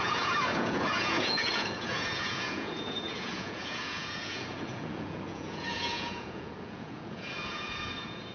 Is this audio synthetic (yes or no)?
yes